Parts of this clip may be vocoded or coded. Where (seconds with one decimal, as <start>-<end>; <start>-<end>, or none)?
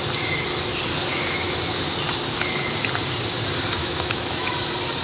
1.1-1.7; 3.8-4.5